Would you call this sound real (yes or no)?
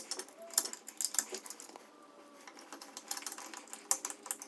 yes